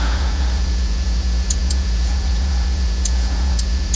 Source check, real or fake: fake